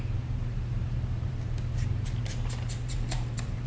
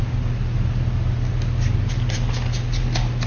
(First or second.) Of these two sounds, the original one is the second